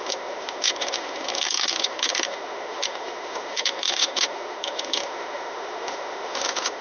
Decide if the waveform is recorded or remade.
remade